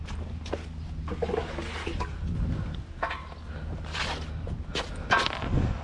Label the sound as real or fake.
real